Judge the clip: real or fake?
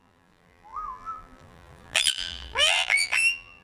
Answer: fake